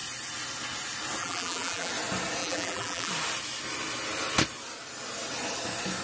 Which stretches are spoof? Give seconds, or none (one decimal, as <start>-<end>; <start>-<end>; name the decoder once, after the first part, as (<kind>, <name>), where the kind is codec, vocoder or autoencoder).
1.2-1.9 (vocoder, BigVGAN v2); 2.4-3.1